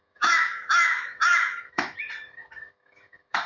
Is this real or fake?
fake